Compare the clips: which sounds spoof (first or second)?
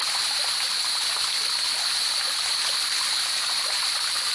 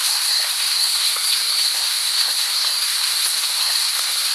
second